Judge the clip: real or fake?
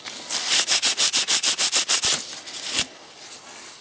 real